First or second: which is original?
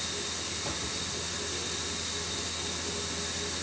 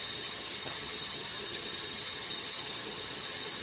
first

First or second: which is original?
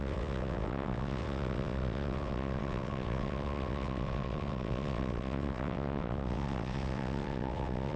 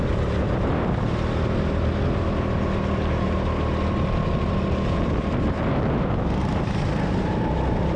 second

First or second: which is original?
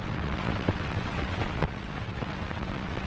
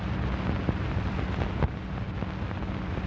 second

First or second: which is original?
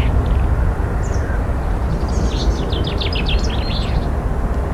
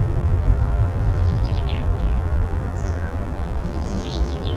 first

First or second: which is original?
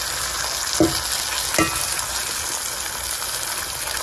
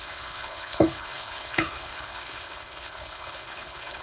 first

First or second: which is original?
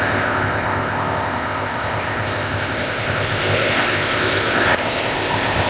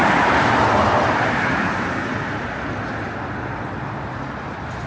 second